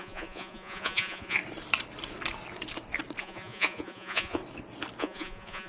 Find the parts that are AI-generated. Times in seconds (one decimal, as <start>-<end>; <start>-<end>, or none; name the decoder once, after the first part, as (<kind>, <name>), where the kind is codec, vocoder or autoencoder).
0.0-1.4 (vocoder, Vocos); 3.2-4.4; 5.0-5.7